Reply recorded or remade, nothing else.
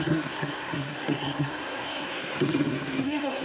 remade